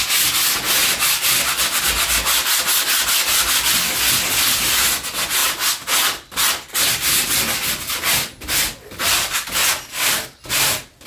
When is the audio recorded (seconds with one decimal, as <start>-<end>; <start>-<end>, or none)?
0.0-5.4; 6.5-11.1